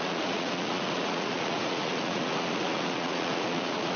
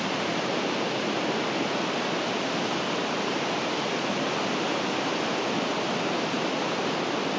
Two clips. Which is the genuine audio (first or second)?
second